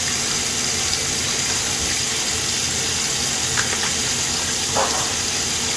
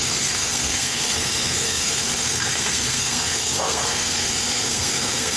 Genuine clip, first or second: first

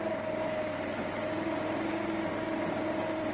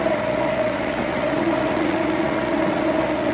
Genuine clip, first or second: first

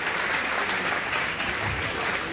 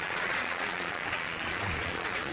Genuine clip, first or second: first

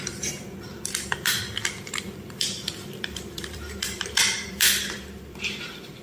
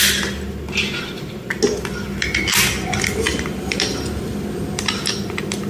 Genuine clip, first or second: second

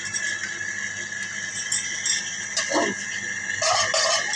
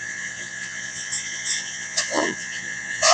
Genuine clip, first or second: first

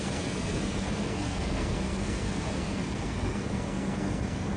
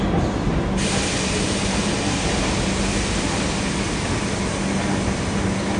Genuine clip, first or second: second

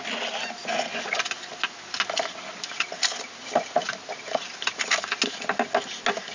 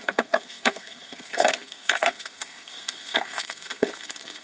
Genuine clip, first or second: first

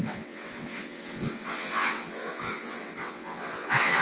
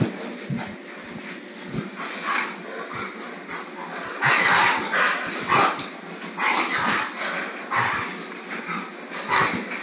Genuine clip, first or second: second